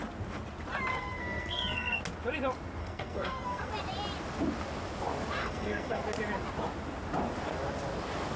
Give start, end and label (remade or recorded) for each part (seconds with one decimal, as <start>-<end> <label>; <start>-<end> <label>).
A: 0.0-0.9 recorded; 0.9-2.0 remade; 2.0-2.8 recorded; 2.8-3.7 remade; 3.7-5.4 recorded; 5.4-6.0 remade; 6.0-8.4 recorded